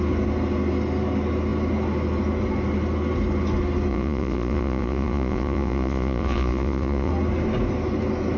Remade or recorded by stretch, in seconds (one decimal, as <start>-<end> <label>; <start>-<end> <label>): 0.0-3.9 recorded; 3.9-7.1 remade; 7.1-8.4 recorded